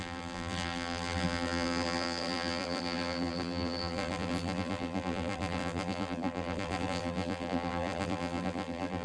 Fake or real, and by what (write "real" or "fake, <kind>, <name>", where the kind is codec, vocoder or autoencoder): fake, vocoder, BigVGAN v2